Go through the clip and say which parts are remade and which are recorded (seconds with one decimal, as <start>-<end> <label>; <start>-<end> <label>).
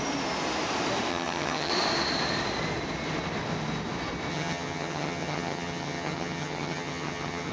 0.0-1.1 recorded; 1.1-1.7 remade; 1.7-4.3 recorded; 4.3-7.5 remade